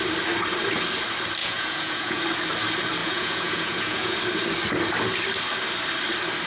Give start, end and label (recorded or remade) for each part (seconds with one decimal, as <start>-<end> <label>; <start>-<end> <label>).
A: 0.0-1.4 recorded; 1.4-2.2 remade; 2.2-3.0 recorded; 3.0-4.2 remade; 4.2-6.5 recorded